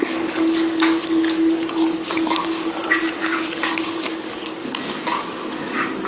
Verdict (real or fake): fake